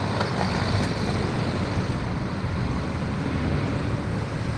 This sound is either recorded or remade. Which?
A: recorded